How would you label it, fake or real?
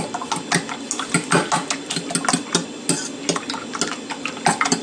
real